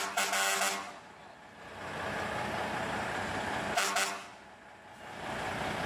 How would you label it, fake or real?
real